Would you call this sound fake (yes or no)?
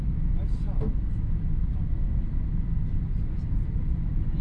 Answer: no